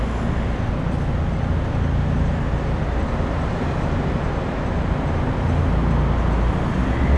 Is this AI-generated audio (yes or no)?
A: no